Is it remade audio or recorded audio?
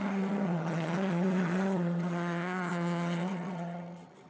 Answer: remade